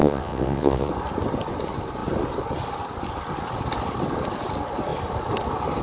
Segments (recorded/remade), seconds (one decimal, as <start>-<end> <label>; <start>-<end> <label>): 0.0-0.9 remade; 0.9-5.8 recorded